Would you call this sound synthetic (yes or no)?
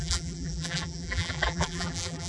yes